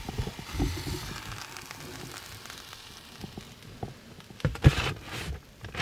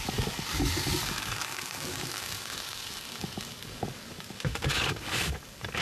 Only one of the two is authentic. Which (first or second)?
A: first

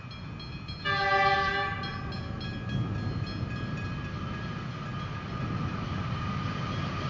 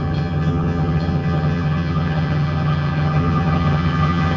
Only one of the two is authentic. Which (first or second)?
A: first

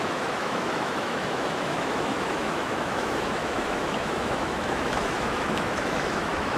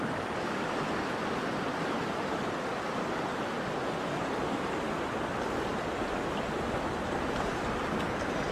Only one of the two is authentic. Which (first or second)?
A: second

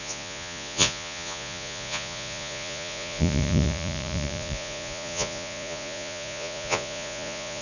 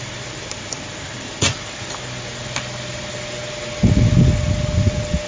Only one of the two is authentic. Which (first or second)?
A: second